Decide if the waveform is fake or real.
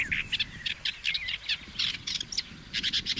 real